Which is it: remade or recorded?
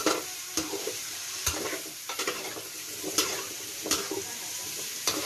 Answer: remade